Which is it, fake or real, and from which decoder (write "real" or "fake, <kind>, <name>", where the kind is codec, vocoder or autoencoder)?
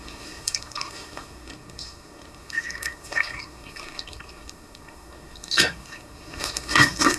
fake, codec, SNAC